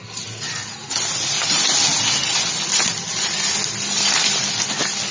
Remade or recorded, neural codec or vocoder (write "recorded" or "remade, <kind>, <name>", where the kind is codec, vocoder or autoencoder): recorded